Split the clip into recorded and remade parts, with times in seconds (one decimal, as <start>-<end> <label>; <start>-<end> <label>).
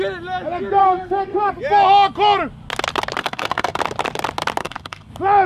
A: 0.0-0.8 recorded; 0.8-1.5 remade; 1.5-3.2 recorded; 3.2-3.8 remade; 3.8-4.6 recorded; 4.6-5.1 remade; 5.1-5.5 recorded